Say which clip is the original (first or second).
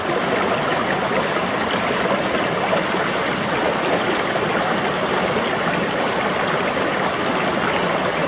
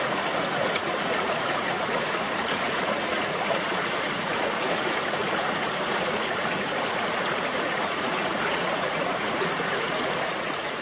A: first